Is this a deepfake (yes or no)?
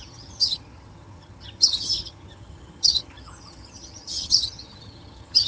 yes